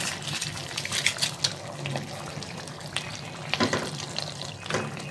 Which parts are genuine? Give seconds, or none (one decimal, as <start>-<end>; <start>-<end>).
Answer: 0.6-2.3